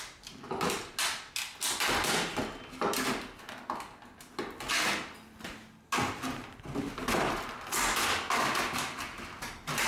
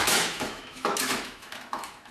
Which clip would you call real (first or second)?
first